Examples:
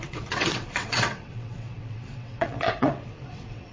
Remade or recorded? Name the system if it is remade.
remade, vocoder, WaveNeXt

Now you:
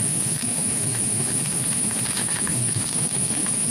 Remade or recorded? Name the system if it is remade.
remade, autoencoder, DAC-VAE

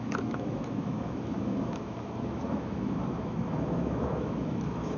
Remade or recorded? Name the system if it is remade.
remade, autoencoder, DAC-VAE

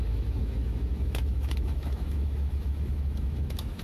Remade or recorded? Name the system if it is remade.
remade, autoencoder, DAC-VAE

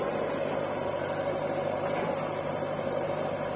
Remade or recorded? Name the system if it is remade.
recorded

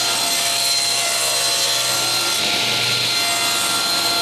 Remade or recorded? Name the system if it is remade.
recorded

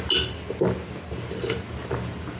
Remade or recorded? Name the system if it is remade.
recorded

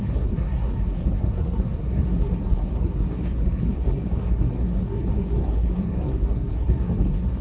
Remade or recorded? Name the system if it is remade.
remade, codec, SNAC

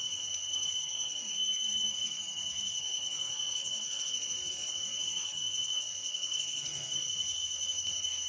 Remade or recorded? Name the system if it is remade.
remade, codec, SNAC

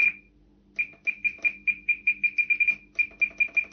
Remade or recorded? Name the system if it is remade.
recorded